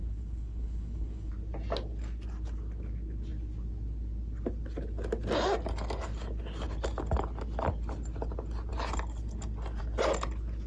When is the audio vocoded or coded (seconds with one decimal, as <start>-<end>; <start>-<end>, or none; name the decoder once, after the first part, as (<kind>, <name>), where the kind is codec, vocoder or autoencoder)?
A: 0.0-1.3 (codec, HILCodec)